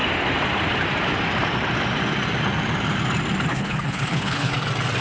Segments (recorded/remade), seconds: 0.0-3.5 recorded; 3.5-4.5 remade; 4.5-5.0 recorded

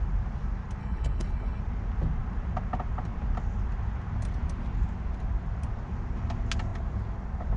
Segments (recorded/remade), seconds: 0.0-0.8 recorded; 0.8-1.6 remade; 1.6-7.6 recorded

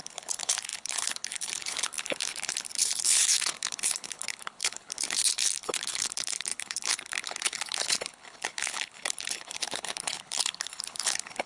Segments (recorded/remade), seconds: 0.0-11.5 remade

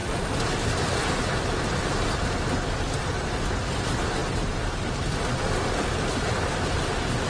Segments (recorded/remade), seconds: 0.0-7.3 recorded